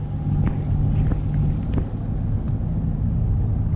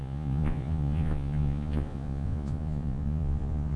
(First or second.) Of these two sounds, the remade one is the second